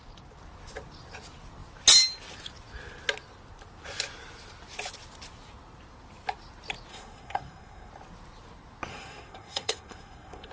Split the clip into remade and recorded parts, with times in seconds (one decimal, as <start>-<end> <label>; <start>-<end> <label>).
0.0-6.9 recorded; 6.9-7.9 remade; 7.9-8.9 recorded; 8.9-10.5 remade